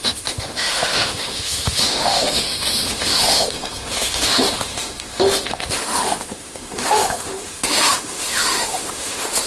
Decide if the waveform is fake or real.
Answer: fake